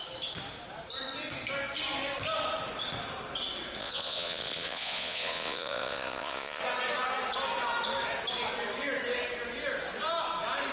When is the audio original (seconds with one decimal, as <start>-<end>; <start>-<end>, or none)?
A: 0.0-3.8; 6.6-10.7